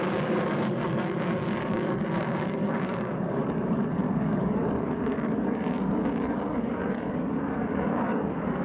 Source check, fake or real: fake